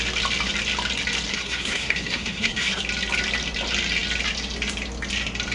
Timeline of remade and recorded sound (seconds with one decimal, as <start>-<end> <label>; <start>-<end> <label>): 0.0-1.3 recorded; 1.3-2.8 remade; 2.8-5.5 recorded